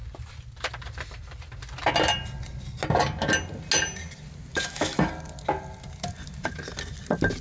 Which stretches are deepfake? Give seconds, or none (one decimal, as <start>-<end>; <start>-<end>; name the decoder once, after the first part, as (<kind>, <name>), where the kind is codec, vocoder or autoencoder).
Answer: 4.5-5.1 (autoencoder, DAC-VAE)